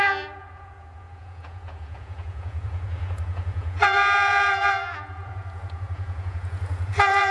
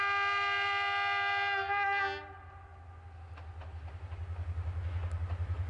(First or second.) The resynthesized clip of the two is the first